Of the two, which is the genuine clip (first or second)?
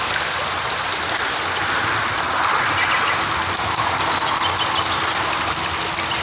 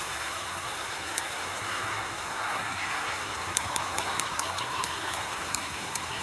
first